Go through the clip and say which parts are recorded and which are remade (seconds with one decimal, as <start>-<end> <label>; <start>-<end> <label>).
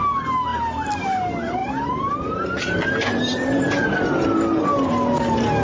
0.0-1.6 recorded; 1.6-4.9 remade; 4.9-5.6 recorded